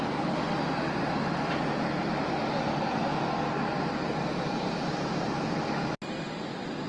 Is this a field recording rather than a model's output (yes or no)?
yes